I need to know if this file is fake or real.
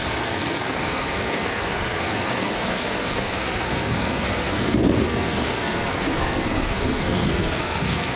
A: fake